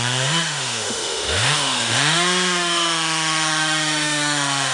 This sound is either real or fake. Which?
fake